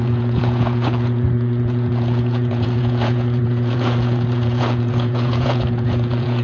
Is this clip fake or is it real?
fake